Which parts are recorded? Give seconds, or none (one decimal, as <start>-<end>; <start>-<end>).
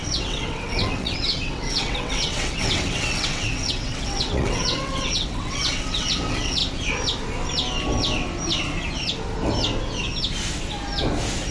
6.6-11.5